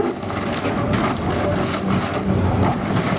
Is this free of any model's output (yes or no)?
yes